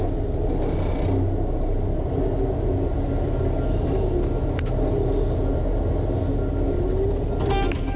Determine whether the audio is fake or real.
real